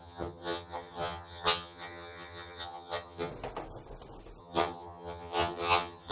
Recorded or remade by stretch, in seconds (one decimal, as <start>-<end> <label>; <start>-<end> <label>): 0.0-3.3 remade; 3.3-4.4 recorded; 4.4-6.1 remade